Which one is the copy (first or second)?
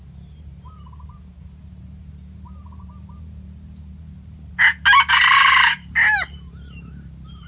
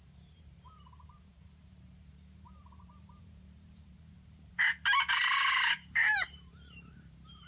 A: second